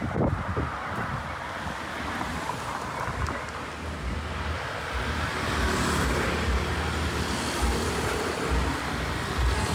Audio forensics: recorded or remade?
recorded